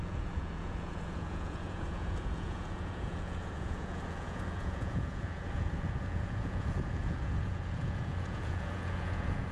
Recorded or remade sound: remade